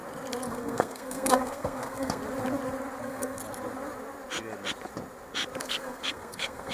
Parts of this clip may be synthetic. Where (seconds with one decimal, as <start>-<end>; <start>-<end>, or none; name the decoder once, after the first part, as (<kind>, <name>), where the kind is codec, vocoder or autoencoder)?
0.5-2.2 (codec, SNAC); 3.0-3.4; 5.6-6.7

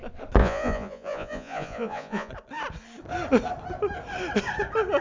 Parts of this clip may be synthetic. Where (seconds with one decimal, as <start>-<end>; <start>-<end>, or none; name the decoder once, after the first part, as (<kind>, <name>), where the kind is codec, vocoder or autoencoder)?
0.4-2.3 (vocoder, Vocos)

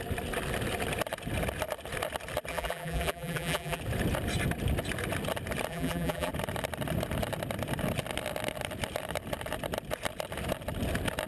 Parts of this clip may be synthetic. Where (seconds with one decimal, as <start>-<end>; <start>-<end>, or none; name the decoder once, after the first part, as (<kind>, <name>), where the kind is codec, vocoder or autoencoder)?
2.5-3.8 (vocoder, BigVGAN v2); 5.7-6.3